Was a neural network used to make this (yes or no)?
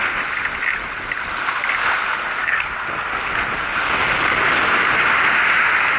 no